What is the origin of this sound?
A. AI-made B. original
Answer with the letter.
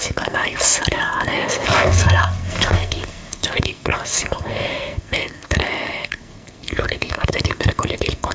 A